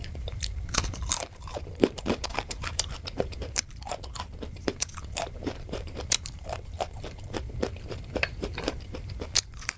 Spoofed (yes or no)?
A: yes